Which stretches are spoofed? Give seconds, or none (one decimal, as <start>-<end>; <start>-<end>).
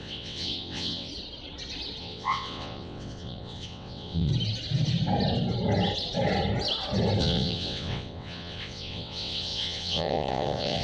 0.0-1.1; 2.0-4.3; 7.2-10.8